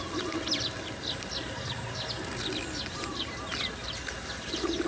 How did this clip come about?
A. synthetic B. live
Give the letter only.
B